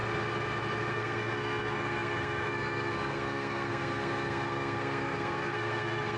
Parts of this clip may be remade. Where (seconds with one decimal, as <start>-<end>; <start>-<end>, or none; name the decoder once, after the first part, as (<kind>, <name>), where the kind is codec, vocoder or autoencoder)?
0.9-6.2 (codec, SNAC)